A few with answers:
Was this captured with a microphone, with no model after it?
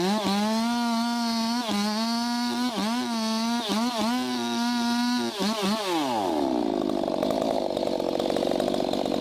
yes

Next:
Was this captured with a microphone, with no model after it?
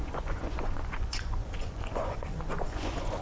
no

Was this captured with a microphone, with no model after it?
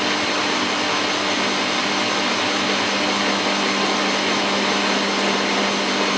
yes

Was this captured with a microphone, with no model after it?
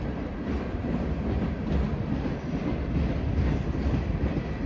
yes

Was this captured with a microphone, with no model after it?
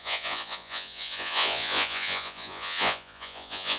no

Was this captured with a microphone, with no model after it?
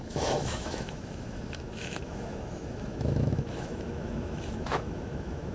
no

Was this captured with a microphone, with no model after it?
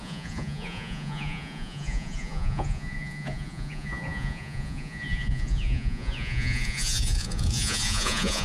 no